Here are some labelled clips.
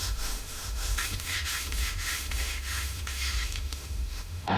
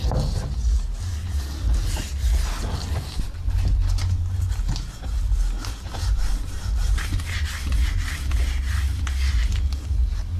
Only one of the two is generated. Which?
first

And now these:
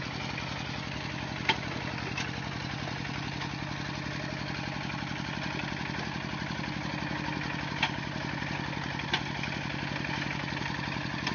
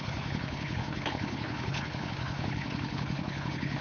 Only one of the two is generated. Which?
second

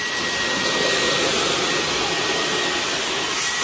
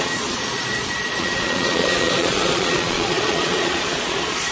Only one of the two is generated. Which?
second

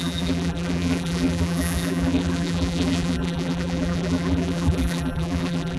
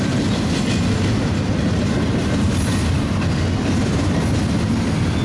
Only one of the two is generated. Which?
first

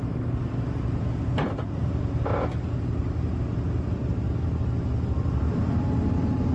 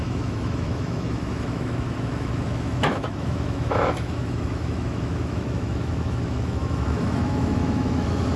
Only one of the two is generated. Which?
second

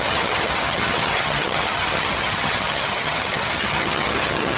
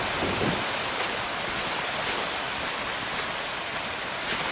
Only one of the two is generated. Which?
first